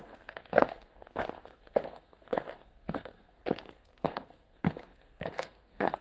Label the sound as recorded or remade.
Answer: remade